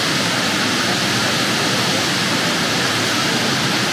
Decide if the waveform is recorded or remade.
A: recorded